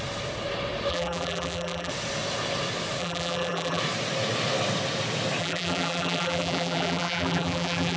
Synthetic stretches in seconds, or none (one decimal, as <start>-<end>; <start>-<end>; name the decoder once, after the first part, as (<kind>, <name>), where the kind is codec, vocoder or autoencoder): 0.9-1.9 (vocoder, BigVGAN v2); 3.0-3.8; 5.4-8.0